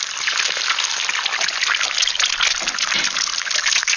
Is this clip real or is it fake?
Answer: real